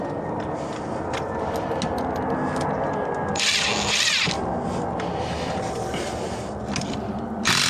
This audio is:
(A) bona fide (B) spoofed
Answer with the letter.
A